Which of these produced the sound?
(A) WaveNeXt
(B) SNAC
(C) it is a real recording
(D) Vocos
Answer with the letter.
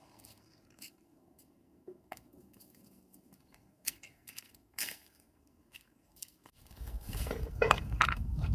B